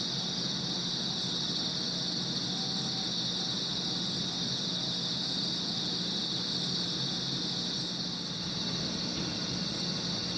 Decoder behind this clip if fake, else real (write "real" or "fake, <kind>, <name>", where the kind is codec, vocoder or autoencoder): real